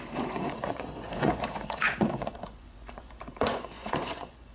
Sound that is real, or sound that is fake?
fake